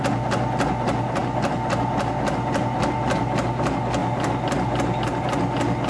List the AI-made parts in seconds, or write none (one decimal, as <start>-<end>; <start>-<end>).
none